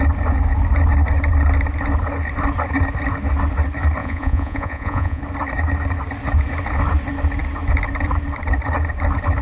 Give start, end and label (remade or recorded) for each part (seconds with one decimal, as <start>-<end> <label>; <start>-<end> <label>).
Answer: 0.0-4.0 recorded; 4.0-5.2 remade; 5.2-9.4 recorded